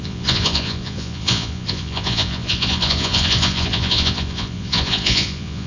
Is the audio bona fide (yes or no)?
no